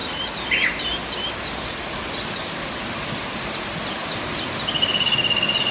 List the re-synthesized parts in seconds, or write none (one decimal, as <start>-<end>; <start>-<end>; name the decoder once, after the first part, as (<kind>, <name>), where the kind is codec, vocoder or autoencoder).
none